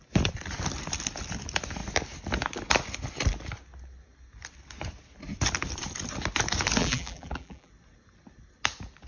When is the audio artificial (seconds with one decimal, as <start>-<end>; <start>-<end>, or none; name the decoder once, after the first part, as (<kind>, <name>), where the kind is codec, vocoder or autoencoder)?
6.8-7.7 (vocoder, BigVGAN v2)